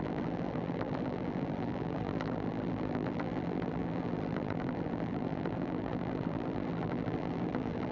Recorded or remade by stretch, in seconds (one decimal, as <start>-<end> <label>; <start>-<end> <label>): 0.0-7.9 remade